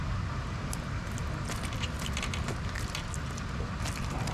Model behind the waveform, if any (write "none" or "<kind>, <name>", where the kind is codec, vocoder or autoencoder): none